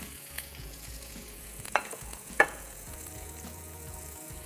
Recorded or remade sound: remade